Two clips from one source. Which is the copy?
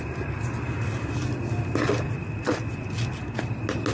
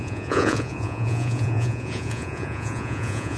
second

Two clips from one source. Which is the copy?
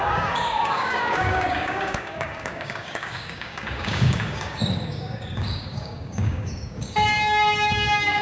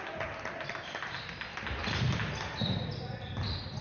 first